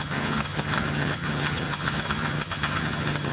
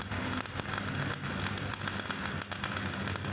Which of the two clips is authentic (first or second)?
second